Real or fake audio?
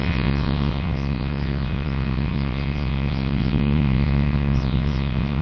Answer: fake